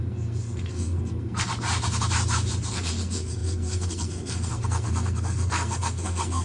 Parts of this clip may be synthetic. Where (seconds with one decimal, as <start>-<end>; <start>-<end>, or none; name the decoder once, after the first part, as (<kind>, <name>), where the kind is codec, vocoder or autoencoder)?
0.0-1.5 (codec, SNAC); 2.7-6.4